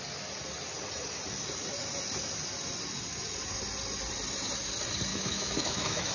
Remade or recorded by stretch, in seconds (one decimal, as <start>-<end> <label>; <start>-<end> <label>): 0.0-5.1 recorded; 5.1-6.1 remade